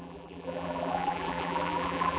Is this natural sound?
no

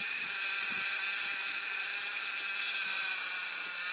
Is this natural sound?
yes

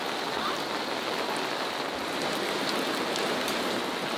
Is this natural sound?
yes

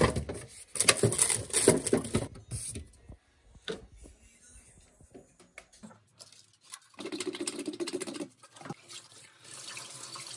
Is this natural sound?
yes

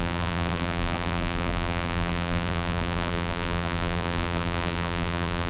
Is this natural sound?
no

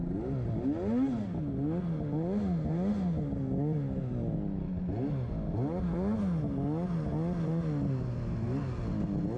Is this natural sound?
yes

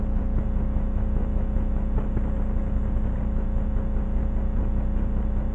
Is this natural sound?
yes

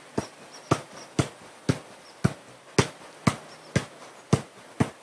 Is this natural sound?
yes